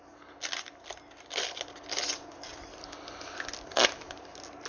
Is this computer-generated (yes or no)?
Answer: no